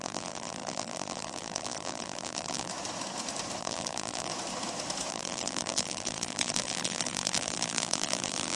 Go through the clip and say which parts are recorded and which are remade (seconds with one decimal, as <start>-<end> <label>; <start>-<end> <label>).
0.0-2.7 remade; 2.7-3.6 recorded; 3.6-4.3 remade; 4.3-5.1 recorded; 5.1-8.6 remade